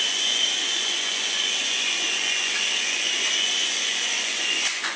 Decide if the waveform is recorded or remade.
remade